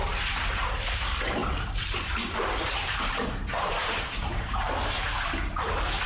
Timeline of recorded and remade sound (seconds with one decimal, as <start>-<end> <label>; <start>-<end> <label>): 0.0-1.4 recorded; 1.4-5.1 remade; 5.1-6.1 recorded